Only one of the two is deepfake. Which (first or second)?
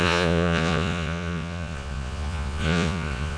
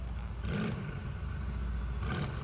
first